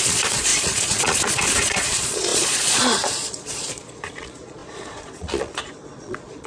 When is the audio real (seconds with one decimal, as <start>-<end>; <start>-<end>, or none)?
none